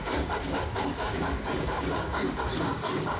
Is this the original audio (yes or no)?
no